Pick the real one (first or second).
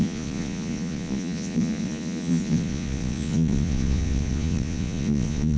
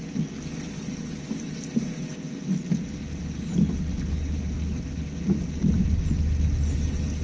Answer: second